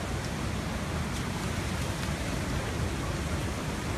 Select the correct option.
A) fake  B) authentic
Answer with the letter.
B